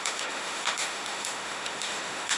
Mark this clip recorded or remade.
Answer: remade